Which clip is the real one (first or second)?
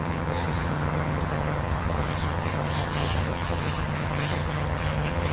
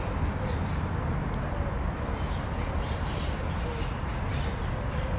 second